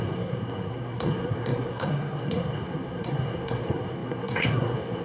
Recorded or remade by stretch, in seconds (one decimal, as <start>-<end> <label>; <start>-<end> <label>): 0.0-5.0 remade